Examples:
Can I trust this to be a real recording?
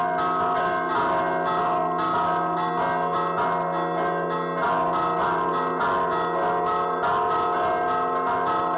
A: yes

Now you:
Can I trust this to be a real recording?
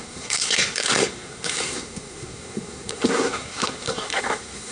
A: no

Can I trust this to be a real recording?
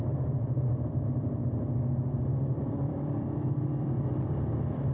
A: no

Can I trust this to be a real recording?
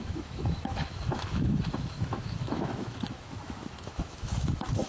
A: no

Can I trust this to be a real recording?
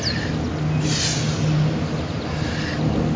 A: yes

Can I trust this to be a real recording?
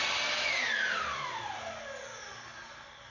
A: yes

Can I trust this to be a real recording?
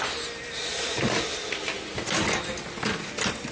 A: yes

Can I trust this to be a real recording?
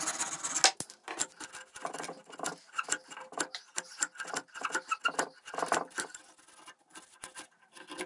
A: yes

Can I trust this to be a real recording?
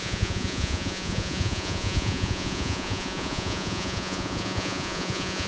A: no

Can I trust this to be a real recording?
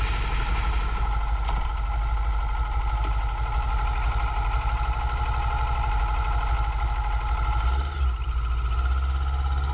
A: yes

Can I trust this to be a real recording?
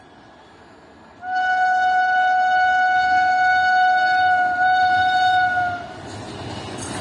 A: yes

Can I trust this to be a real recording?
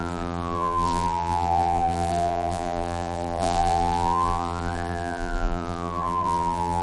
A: no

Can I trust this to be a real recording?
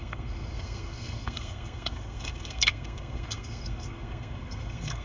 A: no